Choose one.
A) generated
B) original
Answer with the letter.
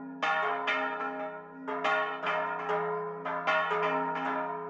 B